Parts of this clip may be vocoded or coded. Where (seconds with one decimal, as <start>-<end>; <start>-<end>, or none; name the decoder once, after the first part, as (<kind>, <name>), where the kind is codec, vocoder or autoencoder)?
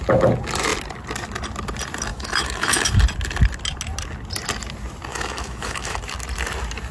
2.1-2.9 (autoencoder, DAC-VAE); 5.1-6.0